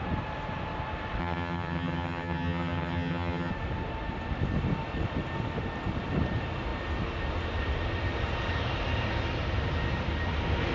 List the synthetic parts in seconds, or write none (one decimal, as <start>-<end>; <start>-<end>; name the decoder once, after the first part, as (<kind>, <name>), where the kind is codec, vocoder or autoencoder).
1.2-3.5 (vocoder, HiFi-GAN)